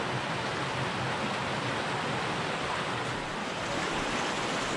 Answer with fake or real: real